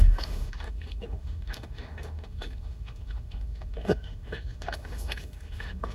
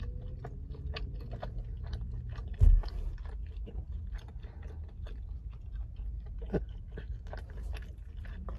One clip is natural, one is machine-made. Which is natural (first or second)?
second